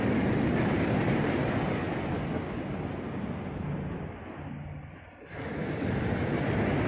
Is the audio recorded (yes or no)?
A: yes